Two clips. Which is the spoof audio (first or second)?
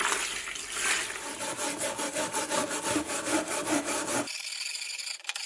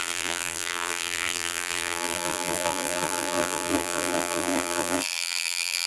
second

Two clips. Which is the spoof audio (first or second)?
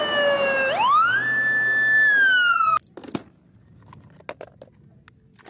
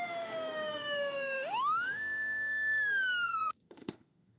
second